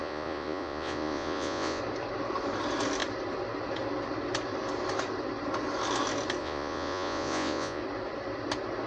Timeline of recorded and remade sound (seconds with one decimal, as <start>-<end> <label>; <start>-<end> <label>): 0.0-1.8 remade; 1.8-6.4 recorded; 6.4-7.8 remade; 7.8-8.9 recorded